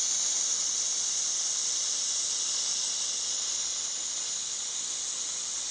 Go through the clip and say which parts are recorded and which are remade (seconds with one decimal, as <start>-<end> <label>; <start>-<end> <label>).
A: 0.0-5.7 recorded